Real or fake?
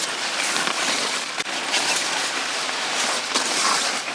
real